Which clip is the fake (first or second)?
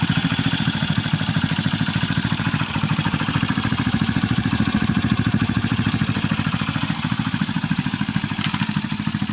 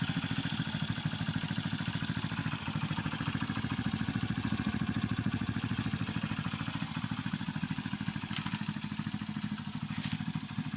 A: first